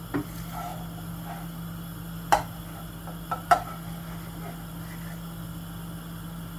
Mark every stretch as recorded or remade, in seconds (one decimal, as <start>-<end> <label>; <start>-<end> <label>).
0.0-6.6 recorded